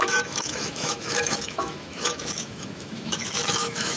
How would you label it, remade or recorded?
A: remade